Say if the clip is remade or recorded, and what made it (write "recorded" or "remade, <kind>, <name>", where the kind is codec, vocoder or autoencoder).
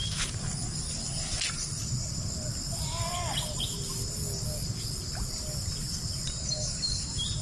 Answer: recorded